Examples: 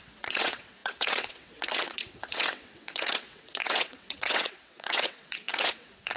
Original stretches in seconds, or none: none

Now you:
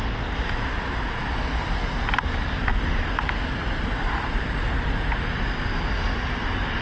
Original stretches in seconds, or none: 0.0-6.8